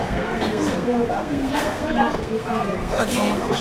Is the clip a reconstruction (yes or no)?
yes